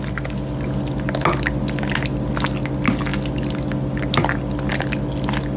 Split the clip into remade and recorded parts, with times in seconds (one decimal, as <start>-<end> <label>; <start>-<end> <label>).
0.0-5.6 recorded